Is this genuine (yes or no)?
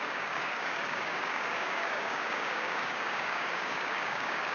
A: no